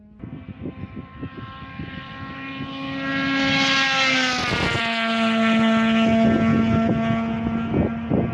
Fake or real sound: real